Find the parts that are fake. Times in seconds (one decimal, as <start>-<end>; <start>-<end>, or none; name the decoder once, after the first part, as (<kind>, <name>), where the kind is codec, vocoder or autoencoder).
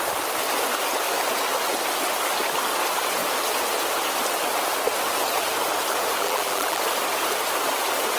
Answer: 6.2-6.8 (vocoder, BigVGAN v2)